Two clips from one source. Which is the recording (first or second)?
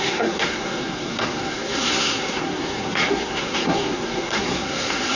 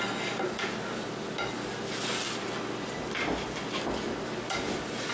second